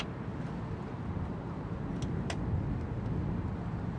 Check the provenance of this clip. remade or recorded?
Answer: recorded